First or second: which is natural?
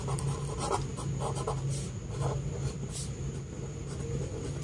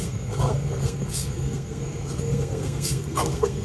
first